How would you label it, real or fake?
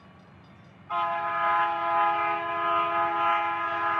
real